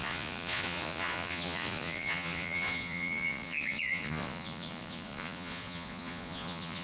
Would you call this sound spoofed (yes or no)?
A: yes